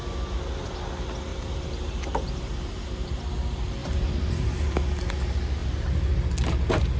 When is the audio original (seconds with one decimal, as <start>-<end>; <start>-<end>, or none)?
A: 0.0-1.3; 3.2-3.8; 4.7-7.0